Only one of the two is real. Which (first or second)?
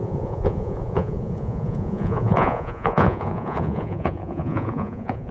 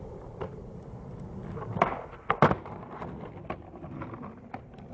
second